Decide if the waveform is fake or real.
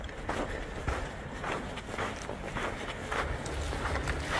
real